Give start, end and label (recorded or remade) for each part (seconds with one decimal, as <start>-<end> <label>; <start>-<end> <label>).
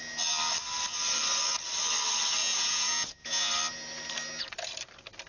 0.0-2.4 recorded; 2.4-3.5 remade; 3.5-5.3 recorded